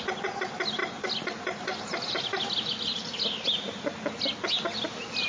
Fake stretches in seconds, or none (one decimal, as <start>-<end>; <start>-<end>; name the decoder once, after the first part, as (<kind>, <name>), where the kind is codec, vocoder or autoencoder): none